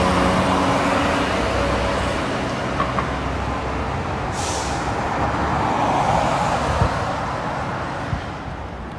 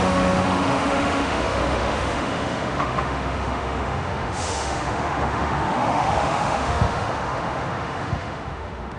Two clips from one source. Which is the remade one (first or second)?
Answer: second